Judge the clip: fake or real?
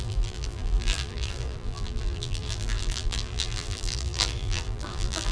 fake